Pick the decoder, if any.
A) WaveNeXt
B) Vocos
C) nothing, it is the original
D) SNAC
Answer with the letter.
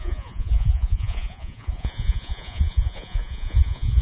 B